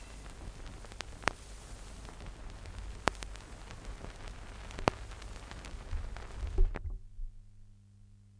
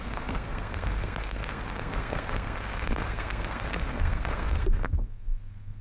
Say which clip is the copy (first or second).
second